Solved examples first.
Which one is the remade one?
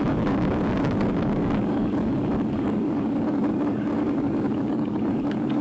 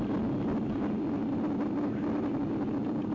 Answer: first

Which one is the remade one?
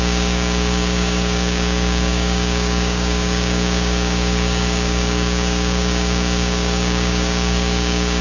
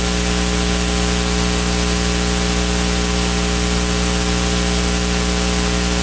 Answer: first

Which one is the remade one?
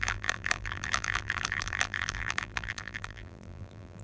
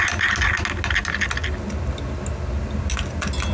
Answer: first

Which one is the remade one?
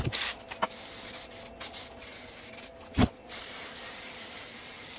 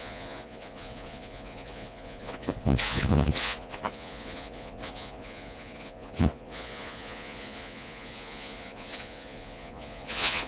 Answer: second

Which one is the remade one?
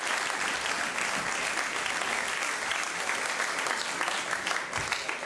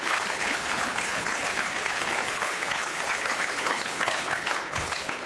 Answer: second